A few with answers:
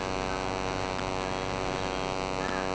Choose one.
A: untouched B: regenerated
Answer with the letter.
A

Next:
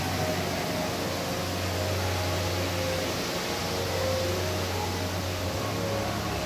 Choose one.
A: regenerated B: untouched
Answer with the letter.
B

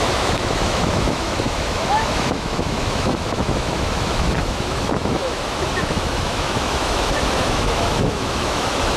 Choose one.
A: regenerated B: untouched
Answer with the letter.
A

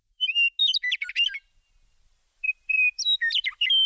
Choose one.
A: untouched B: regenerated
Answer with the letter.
A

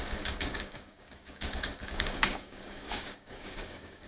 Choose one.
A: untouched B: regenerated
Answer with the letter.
B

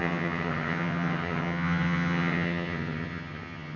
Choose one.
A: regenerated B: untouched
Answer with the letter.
A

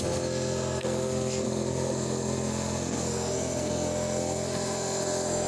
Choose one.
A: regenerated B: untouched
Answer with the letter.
A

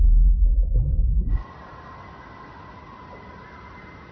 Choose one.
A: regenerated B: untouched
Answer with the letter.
B